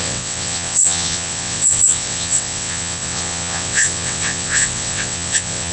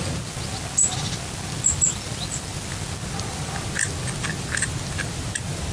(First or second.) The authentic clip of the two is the second